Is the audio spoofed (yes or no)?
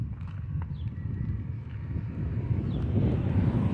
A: no